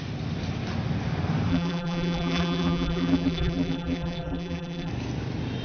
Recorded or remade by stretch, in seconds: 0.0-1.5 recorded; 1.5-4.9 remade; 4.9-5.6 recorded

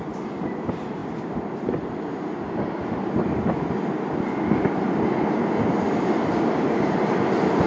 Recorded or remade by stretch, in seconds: 0.0-1.0 recorded; 1.0-4.1 remade; 4.1-7.7 recorded

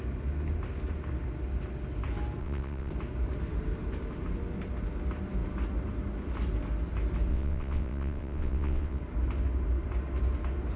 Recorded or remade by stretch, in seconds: 0.0-2.4 recorded; 2.4-2.9 remade; 2.9-7.3 recorded; 7.3-9.0 remade; 9.0-10.8 recorded

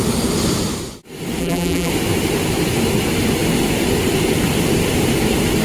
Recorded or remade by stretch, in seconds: 0.0-1.4 recorded; 1.4-1.9 remade; 1.9-5.6 recorded

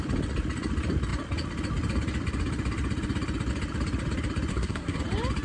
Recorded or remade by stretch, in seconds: 0.0-4.5 recorded; 4.5-5.0 remade; 5.0-5.4 recorded

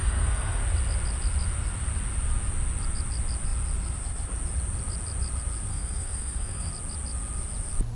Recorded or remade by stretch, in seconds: 0.0-0.6 remade; 0.6-5.7 recorded; 5.7-6.7 remade; 6.7-8.0 recorded

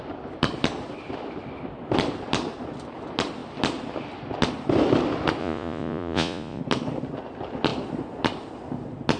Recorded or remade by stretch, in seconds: 0.0-5.4 recorded; 5.4-6.6 remade; 6.6-9.2 recorded